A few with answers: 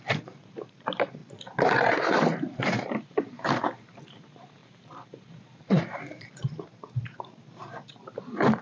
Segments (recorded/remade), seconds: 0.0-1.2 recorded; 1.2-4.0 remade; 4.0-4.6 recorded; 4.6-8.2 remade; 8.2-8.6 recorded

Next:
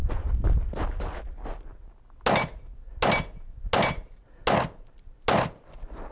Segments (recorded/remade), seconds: 0.0-6.1 recorded